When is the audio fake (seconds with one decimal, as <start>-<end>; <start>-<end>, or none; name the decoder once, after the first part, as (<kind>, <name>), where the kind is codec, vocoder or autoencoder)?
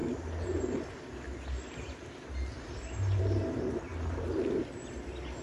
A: none